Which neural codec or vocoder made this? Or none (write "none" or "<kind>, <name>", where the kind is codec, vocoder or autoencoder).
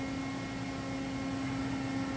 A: none